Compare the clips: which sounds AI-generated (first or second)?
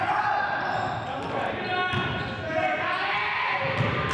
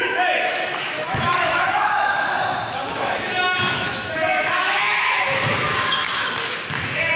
second